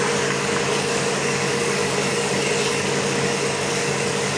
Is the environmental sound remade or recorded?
remade